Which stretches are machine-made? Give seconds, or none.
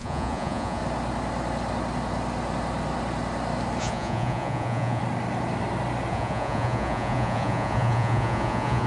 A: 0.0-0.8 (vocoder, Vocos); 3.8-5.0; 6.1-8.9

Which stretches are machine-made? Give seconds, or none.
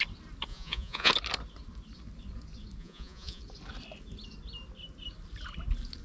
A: 0.5-1.1 (vocoder, Vocos); 2.8-3.4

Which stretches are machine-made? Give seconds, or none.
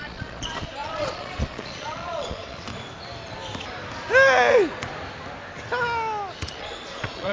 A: 0.0-2.7 (vocoder, Vocos); 6.5-7.3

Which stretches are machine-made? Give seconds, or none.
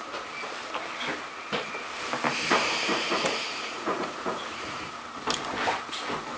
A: 2.9-4.9 (vocoder, Vocos)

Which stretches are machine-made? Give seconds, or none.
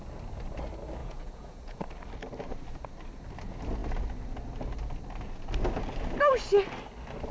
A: 1.0-1.8 (vocoder, Vocos)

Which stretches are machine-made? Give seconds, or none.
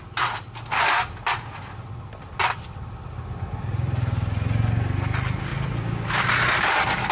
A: none